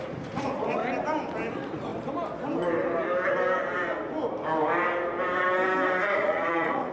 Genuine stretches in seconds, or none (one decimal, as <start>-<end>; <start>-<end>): 0.8-1.5; 1.9-6.0